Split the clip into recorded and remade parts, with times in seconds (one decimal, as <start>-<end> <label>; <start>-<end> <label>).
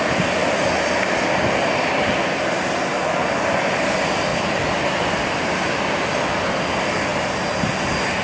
0.0-8.2 recorded